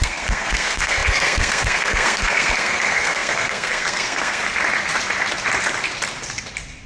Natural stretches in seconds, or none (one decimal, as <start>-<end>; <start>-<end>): 4.4-6.9